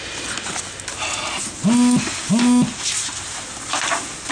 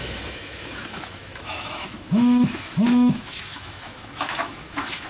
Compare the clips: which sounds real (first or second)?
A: first